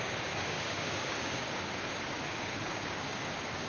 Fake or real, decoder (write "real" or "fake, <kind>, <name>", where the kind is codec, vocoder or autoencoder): fake, codec, DAC